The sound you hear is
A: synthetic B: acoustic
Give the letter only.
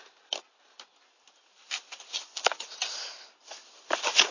B